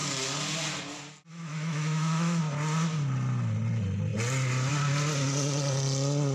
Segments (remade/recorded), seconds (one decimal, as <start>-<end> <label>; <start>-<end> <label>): 0.0-1.3 recorded; 1.3-2.4 remade; 2.4-6.3 recorded